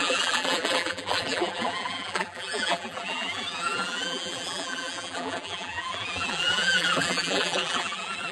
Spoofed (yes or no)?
yes